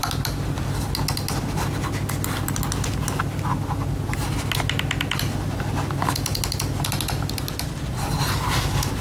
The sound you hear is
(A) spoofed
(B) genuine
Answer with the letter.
B